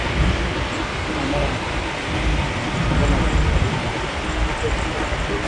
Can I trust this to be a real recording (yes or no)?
yes